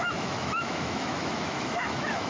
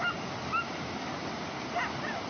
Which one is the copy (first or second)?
first